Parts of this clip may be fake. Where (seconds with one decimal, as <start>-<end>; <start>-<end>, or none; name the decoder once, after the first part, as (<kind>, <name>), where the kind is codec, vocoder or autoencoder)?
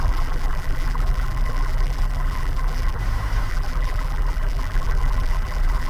0.0-3.0 (vocoder, BigVGAN v2); 3.5-5.9